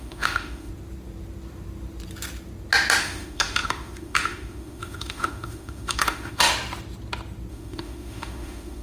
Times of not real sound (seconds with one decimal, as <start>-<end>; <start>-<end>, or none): 0.0-0.7; 3.0-6.5; 7.5-8.8